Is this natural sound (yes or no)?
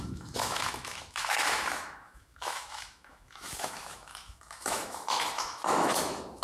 no